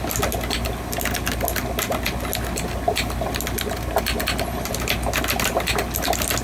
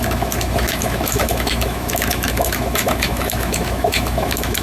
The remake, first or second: second